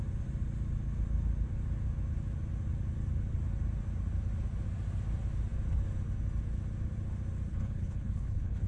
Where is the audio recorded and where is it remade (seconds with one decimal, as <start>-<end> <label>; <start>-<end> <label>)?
0.0-7.5 recorded; 7.5-8.7 remade